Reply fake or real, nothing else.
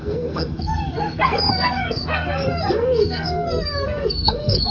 fake